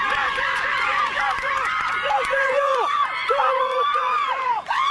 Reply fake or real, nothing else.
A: fake